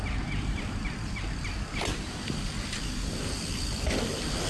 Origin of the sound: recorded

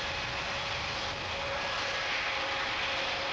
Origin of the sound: recorded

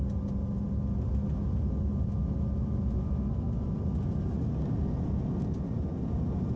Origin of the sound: recorded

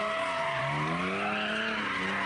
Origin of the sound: recorded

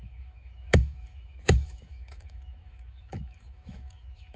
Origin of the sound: remade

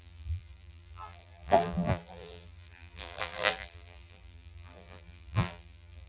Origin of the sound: remade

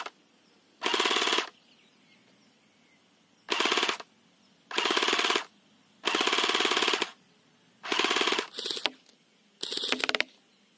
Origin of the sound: recorded